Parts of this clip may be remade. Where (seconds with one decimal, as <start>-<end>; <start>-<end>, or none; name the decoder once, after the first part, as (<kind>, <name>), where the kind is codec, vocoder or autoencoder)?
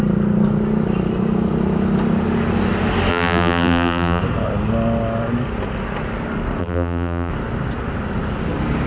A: 3.1-4.2 (vocoder, BigVGAN v2); 6.6-7.3